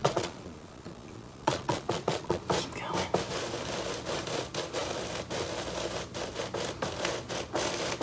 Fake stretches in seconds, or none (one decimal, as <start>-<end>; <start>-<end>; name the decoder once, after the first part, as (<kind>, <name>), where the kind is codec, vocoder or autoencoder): 0.0-2.4 (vocoder, Vocos)

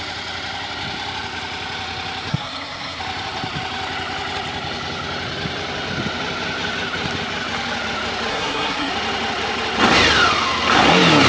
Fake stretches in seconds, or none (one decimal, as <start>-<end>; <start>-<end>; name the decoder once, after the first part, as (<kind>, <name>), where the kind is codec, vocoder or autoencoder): 2.3-3.0 (codec, SNAC); 8.3-8.9

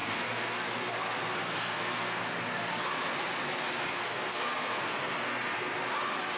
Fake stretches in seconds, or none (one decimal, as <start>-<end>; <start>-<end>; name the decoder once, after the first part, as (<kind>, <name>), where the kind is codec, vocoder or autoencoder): 0.0-2.2 (codec, SNAC); 3.9-5.7

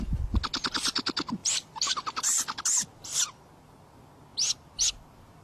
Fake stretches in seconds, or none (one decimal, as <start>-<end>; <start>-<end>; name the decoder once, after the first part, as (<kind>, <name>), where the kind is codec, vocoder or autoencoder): 1.4-2.6 (vocoder, BigVGAN v2)